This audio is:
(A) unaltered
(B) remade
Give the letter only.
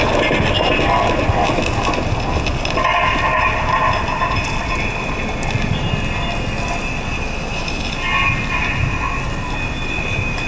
A